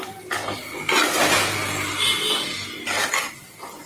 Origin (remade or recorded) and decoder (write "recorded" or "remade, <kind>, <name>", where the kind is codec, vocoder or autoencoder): recorded